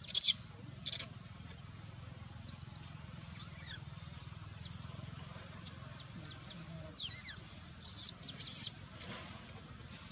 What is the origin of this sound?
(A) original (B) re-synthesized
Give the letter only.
A